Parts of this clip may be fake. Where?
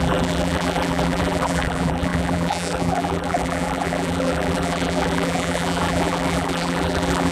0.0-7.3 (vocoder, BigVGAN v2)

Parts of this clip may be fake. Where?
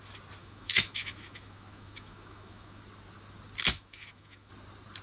0.4-2.8 (autoencoder, DAC-VAE); 3.7-4.5